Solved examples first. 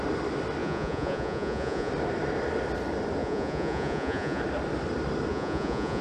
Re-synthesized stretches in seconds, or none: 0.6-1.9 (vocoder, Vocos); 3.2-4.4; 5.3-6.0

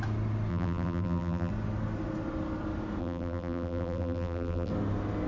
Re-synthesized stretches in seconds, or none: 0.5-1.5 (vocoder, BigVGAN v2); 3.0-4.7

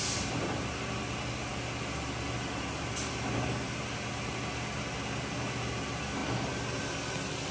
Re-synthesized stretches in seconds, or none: none